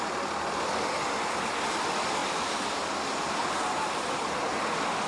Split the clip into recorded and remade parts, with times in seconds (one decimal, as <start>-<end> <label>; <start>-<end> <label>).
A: 0.0-5.1 recorded